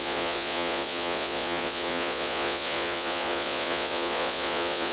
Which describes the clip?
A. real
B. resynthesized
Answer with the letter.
B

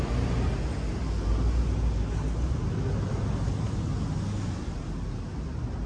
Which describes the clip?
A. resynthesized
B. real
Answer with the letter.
B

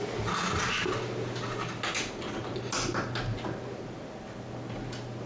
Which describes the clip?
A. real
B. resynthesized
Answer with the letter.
A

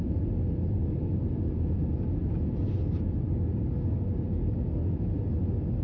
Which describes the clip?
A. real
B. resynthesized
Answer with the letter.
A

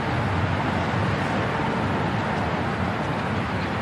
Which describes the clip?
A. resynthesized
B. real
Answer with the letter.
B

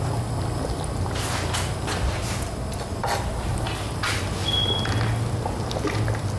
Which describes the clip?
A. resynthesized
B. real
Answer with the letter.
B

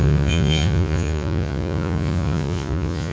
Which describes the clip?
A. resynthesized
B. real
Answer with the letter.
A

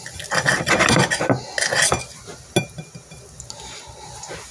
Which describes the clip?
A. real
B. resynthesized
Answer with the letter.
A